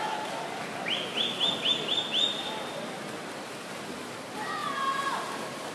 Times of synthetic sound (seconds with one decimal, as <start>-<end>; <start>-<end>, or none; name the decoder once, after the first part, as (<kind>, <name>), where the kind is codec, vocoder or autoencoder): none